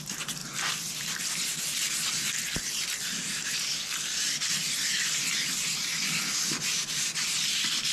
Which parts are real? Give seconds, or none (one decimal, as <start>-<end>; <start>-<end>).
0.0-7.9